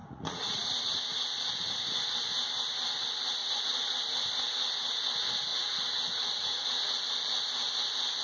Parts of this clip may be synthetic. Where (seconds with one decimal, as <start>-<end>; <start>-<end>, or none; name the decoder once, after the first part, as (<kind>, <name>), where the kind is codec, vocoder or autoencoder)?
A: 0.0-1.2 (vocoder, Vocos); 3.4-3.9; 5.5-7.0